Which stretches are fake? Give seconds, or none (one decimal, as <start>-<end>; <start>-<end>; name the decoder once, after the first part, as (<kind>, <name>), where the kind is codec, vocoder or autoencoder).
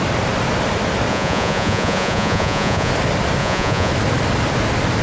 1.1-2.9 (vocoder, Vocos); 3.4-3.9